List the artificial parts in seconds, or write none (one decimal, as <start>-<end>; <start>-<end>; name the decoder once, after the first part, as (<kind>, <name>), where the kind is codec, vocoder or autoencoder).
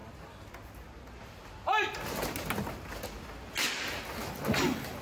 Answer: none